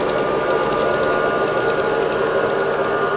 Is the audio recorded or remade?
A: recorded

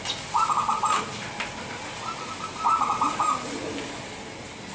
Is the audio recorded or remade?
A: recorded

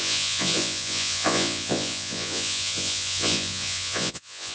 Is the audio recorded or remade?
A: remade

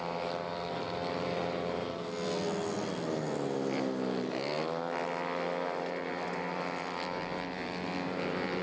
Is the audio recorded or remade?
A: recorded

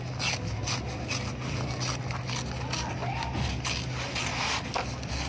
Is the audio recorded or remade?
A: recorded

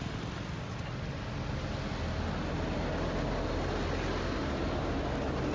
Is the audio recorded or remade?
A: recorded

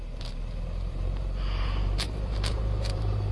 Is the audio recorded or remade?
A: remade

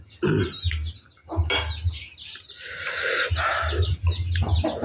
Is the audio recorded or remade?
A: recorded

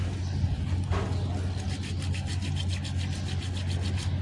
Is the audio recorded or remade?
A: recorded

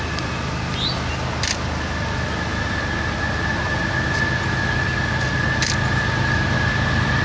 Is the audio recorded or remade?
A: recorded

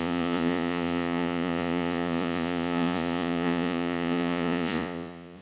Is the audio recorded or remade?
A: remade